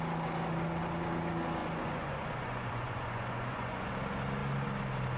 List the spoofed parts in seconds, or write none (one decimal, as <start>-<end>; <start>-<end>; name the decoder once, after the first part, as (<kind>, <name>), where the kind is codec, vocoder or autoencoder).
1.6-3.9 (vocoder, Vocos)